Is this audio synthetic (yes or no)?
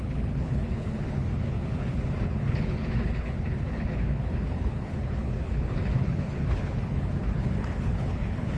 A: yes